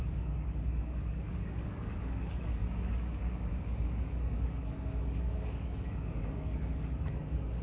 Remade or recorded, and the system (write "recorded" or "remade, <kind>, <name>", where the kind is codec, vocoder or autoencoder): remade, codec, DAC